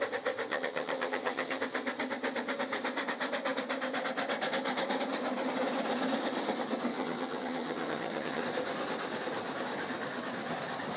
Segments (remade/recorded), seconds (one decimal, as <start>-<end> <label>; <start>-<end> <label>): 0.0-0.5 recorded; 0.5-1.6 remade; 1.6-6.9 recorded; 6.9-8.4 remade; 8.4-11.0 recorded